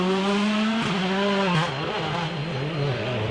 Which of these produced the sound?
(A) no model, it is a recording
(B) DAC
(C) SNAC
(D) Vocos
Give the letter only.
A